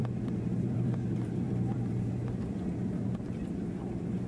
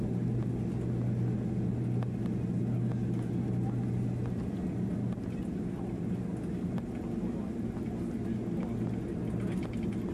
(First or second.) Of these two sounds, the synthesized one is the first